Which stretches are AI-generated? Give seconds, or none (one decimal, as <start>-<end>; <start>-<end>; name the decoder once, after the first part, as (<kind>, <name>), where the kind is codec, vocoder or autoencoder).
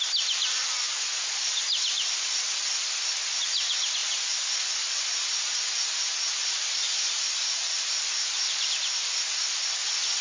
none